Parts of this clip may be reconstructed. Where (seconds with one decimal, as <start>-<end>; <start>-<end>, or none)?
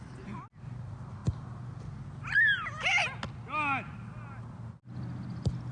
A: none